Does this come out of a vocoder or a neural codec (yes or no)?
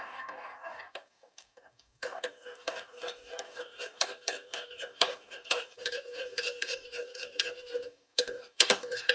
yes